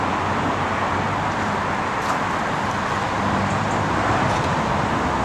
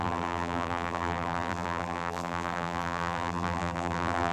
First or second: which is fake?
second